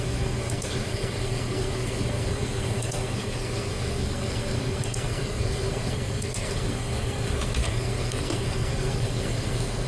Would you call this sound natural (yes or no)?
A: no